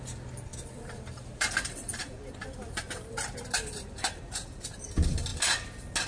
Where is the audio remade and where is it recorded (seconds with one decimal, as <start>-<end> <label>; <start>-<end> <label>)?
0.0-0.5 recorded; 0.5-4.2 remade; 4.2-6.1 recorded